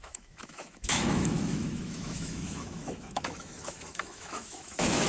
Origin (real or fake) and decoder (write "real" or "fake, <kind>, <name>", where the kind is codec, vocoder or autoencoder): fake, autoencoder, DAC-VAE